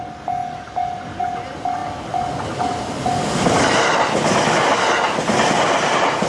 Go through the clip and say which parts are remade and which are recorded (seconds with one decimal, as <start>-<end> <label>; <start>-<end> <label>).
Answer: 0.0-6.3 recorded

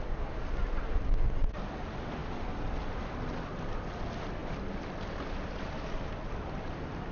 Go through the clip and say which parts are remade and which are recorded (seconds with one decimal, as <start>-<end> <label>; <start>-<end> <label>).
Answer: 0.0-7.1 recorded

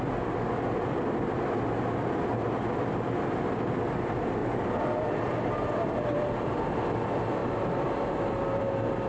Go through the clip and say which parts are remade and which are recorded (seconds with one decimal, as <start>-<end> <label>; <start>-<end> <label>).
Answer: 0.0-4.4 recorded; 4.4-6.8 remade; 6.8-7.4 recorded; 7.4-8.6 remade; 8.6-9.1 recorded

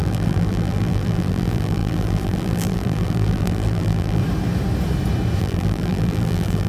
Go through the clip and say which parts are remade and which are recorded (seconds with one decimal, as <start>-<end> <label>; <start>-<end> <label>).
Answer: 0.0-4.2 remade; 4.2-5.4 recorded; 5.4-6.7 remade

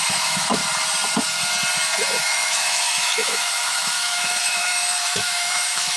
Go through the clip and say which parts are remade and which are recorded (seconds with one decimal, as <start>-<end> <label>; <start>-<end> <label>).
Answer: 0.0-0.6 remade; 0.6-2.2 recorded; 2.2-6.0 remade

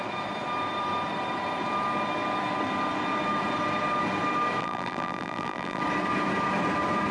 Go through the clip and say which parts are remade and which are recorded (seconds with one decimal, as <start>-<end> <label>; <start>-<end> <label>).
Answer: 0.0-4.6 recorded; 4.6-5.8 remade; 5.8-7.1 recorded

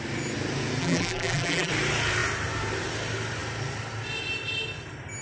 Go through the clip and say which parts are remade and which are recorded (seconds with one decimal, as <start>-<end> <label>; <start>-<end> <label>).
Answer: 0.0-0.8 recorded; 0.8-1.7 remade; 1.7-5.2 recorded